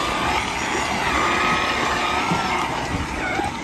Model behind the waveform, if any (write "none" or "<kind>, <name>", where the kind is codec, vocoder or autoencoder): none